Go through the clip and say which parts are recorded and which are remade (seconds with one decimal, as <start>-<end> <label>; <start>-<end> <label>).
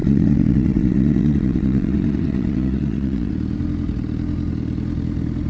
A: 0.0-3.3 remade; 3.3-5.5 recorded